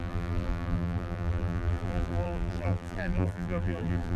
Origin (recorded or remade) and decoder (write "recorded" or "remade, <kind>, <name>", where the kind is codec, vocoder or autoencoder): remade, vocoder, BigVGAN v2